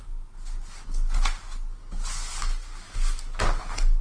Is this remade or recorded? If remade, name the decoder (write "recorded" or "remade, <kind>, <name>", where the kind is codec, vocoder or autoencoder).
recorded